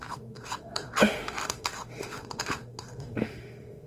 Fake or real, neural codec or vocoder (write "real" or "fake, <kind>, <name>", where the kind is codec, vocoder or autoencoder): fake, autoencoder, DAC-VAE